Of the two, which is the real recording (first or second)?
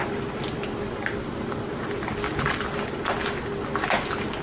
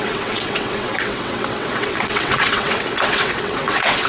first